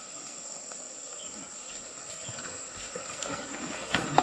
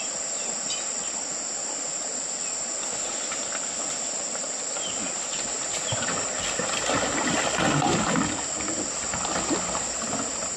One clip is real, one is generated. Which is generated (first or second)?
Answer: first